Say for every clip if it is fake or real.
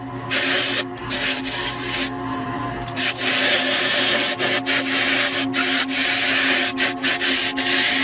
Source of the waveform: real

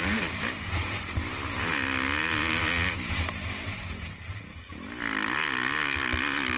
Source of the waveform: real